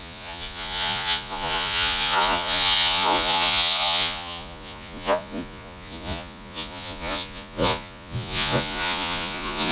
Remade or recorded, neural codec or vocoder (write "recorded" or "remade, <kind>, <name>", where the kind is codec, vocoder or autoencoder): remade, vocoder, Vocos